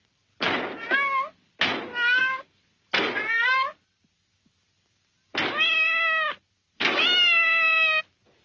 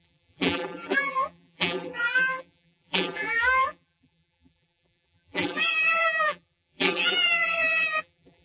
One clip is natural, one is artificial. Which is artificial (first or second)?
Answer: second